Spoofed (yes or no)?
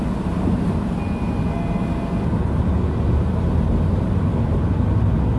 no